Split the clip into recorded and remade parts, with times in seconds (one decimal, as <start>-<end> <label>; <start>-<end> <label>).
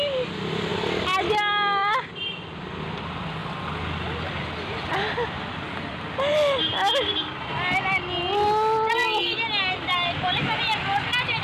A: 0.0-11.4 recorded